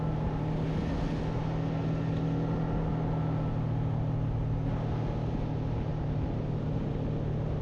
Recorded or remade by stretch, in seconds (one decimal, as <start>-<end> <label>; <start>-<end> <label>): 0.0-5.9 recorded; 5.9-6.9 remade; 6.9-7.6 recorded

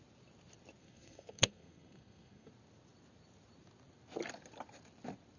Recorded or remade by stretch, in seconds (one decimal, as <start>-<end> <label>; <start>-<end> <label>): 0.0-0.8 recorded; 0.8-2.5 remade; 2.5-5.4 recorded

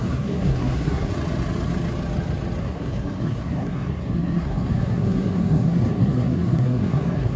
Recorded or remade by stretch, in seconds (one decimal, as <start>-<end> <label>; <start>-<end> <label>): 0.0-1.1 remade; 1.1-2.6 recorded; 2.6-7.4 remade

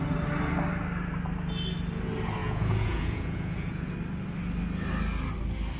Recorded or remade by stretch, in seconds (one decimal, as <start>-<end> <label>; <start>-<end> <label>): 0.0-2.4 recorded; 2.4-3.9 remade; 3.9-5.8 recorded

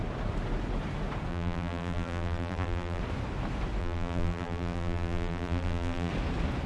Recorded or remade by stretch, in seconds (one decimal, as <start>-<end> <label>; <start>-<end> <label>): 0.0-1.3 recorded; 1.3-3.0 remade; 3.0-3.8 recorded; 3.8-6.1 remade; 6.1-6.7 recorded

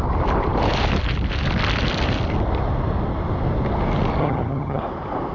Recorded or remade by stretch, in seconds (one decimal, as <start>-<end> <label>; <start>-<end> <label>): 0.0-4.2 recorded; 4.2-4.8 remade; 4.8-5.3 recorded